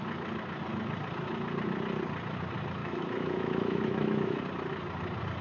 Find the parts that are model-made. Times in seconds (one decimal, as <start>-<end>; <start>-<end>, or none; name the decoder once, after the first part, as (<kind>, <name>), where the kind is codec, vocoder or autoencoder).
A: 2.8-4.4 (autoencoder, DAC-VAE)